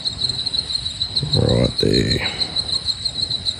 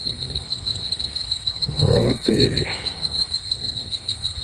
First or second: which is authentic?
first